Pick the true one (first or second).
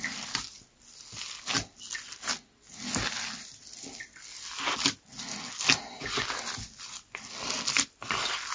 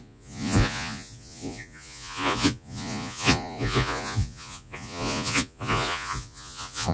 first